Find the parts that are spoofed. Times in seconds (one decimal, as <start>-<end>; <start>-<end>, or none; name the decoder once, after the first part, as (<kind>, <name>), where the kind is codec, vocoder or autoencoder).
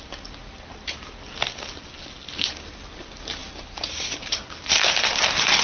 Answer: 1.8-2.8 (vocoder, BigVGAN v2); 3.4-4.7